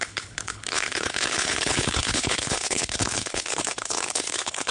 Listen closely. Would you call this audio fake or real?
fake